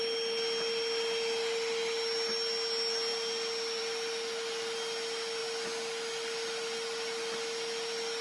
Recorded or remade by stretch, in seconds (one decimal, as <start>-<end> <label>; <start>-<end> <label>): 0.0-8.2 recorded